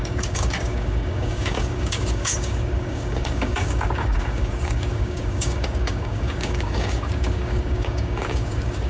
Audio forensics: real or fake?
fake